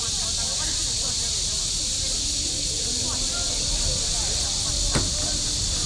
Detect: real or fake real